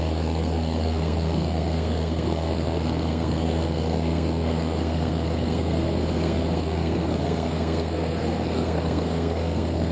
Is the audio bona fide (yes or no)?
no